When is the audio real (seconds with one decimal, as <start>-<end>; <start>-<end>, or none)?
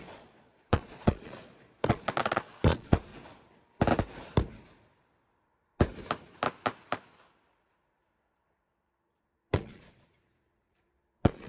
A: 3.1-8.2